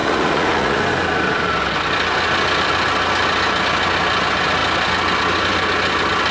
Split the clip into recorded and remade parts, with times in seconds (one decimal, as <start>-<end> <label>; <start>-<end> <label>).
0.0-0.8 remade; 0.8-6.3 recorded